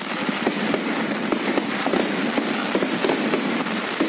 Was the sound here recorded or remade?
recorded